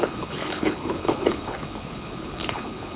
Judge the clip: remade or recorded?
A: remade